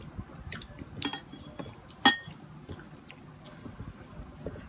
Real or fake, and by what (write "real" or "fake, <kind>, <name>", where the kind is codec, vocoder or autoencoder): real